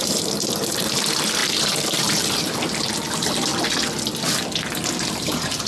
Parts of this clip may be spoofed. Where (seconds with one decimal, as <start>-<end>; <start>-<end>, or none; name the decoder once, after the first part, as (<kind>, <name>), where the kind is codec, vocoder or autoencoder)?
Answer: 0.0-3.5 (vocoder, BigVGAN v2); 5.1-5.7